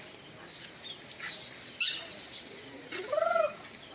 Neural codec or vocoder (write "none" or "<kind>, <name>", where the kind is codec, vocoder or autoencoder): none